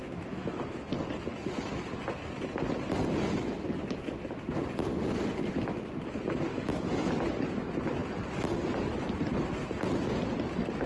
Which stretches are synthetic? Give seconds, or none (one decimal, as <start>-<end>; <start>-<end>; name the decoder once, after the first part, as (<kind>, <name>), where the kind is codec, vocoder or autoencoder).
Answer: 0.0-0.6 (autoencoder, DAC-VAE); 6.5-7.1